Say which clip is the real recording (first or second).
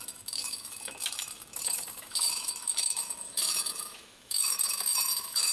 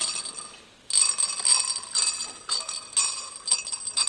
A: second